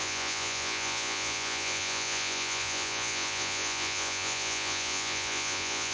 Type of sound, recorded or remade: remade